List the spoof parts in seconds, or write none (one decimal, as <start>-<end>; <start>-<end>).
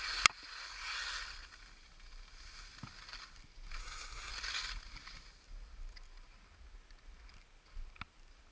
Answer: 3.8-4.3